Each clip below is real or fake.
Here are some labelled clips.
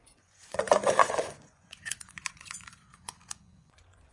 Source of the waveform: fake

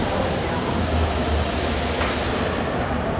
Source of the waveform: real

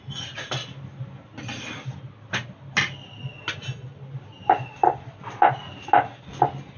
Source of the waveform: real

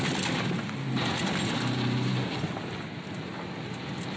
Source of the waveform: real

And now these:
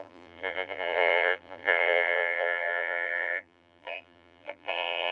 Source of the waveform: fake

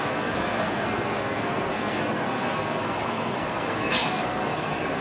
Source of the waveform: fake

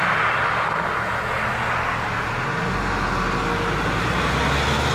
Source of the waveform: real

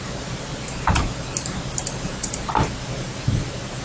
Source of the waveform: real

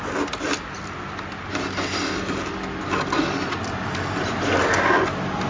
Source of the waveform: real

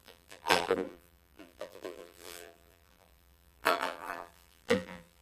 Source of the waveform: fake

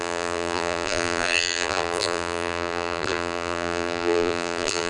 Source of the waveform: fake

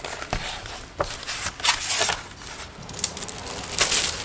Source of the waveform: real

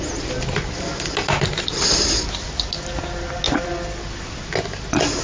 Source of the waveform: real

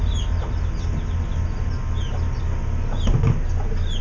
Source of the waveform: real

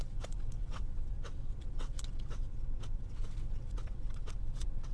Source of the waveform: fake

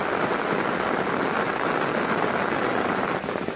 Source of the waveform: real